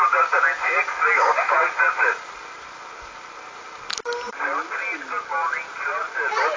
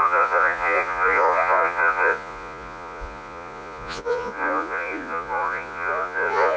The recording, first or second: first